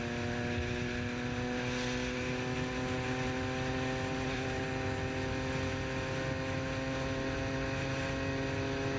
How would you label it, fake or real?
real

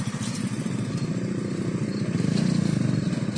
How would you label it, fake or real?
fake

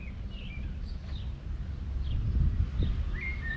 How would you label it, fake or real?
real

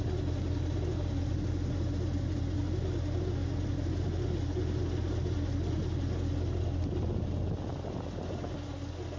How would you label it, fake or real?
real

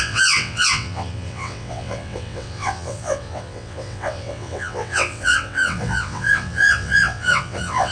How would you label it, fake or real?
fake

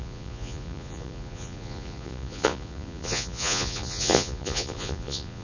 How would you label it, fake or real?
fake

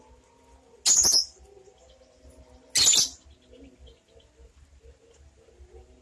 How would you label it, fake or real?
real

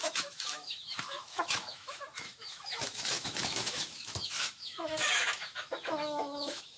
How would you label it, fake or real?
fake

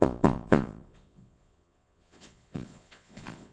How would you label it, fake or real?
fake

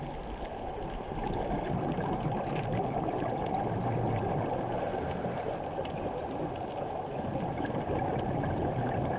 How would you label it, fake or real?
real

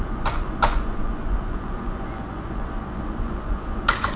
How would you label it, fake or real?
fake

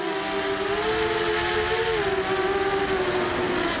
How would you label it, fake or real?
real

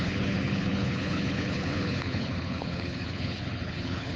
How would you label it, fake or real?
fake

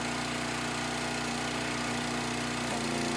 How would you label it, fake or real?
real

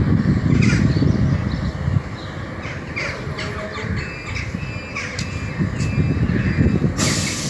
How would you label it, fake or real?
real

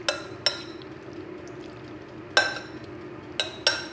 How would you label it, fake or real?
real